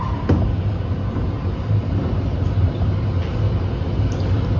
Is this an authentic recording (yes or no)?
yes